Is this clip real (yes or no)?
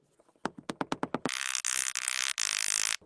yes